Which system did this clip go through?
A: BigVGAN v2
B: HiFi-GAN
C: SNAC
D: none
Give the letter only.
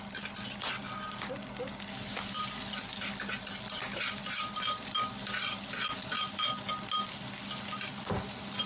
D